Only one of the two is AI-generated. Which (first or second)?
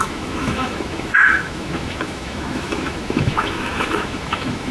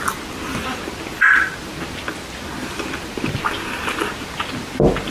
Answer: first